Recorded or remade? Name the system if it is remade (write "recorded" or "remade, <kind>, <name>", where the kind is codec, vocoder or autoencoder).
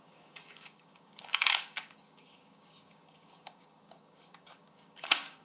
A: remade, codec, DAC